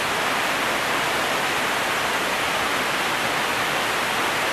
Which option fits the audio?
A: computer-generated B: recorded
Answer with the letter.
A